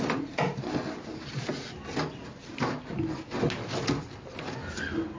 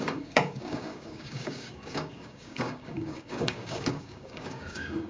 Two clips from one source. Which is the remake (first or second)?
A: second